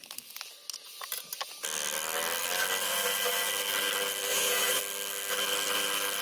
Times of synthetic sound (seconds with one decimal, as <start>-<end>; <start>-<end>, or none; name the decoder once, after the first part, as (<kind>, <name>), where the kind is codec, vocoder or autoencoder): 4.3-4.8 (vocoder, Vocos)